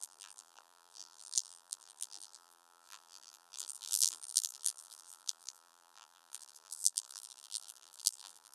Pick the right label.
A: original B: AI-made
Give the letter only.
B